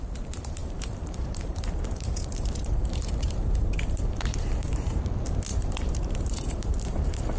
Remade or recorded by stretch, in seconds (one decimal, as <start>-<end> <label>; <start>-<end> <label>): 0.0-0.6 recorded; 0.6-5.0 remade; 5.0-5.5 recorded; 5.5-7.4 remade